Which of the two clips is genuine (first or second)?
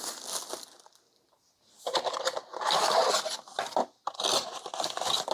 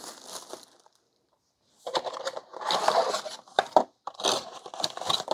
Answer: first